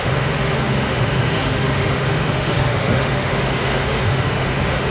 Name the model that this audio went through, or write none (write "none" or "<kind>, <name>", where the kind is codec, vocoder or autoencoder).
autoencoder, DAC-VAE